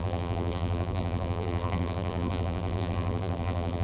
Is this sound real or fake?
fake